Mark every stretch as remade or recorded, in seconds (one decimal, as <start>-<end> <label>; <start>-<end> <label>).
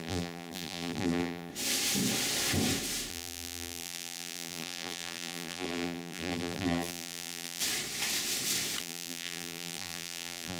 0.0-1.5 remade; 1.5-3.1 recorded; 3.1-7.6 remade; 7.6-8.8 recorded; 8.8-10.6 remade